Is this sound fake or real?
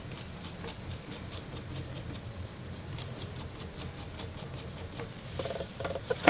fake